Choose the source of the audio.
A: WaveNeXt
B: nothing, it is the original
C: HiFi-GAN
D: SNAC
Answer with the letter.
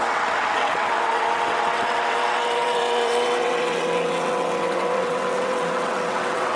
A